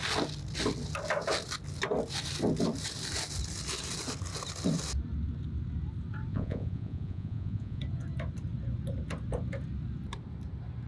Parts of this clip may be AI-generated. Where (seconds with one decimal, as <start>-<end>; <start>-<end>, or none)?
6.3-7.8